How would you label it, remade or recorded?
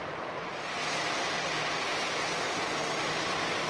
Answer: recorded